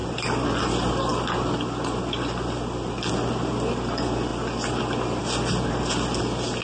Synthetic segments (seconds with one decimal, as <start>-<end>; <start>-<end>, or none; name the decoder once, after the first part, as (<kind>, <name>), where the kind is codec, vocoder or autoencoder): none